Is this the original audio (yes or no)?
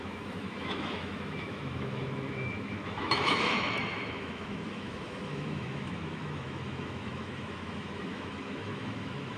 no